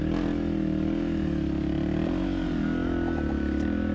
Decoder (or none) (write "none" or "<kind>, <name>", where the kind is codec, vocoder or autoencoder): none